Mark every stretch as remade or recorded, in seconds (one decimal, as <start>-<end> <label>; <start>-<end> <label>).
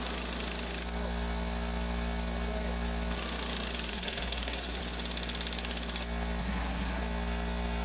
0.0-3.9 recorded; 3.9-4.8 remade; 4.8-6.4 recorded; 6.4-7.0 remade; 7.0-7.8 recorded